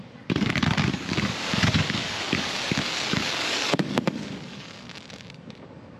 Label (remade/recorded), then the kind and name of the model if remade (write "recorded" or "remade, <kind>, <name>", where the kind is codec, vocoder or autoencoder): remade, codec, DAC